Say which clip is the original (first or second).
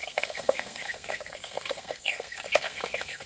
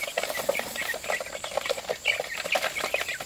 second